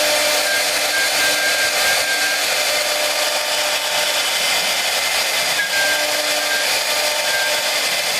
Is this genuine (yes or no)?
yes